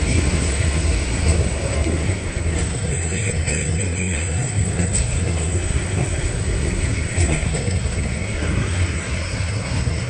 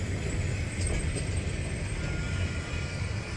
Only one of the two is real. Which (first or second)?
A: second